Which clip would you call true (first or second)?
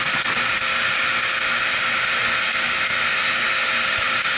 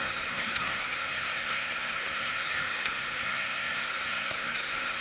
first